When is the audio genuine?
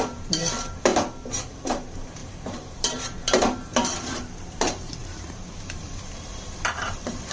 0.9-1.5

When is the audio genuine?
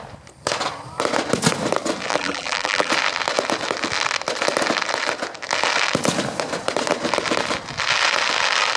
0.0-2.1; 2.9-8.8